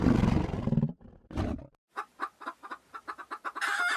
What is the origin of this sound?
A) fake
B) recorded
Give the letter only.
B